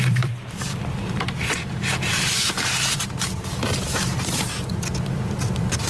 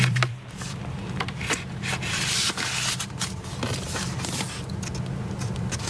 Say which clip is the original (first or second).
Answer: second